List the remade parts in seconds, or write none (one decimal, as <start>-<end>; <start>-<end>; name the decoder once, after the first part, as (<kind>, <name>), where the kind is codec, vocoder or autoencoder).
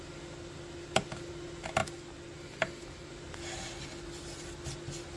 none